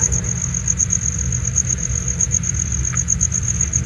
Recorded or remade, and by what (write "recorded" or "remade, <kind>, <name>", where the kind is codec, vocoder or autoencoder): recorded